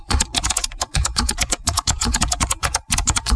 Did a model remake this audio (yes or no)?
yes